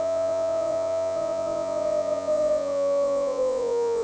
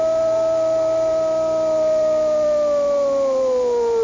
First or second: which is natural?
second